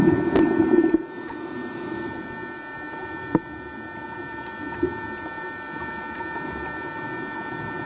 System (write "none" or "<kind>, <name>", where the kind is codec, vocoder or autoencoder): none